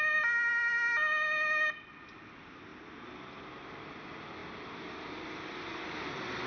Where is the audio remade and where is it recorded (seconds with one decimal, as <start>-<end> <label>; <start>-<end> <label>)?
0.0-6.5 recorded